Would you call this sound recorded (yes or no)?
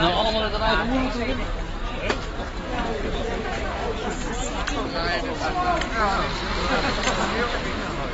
yes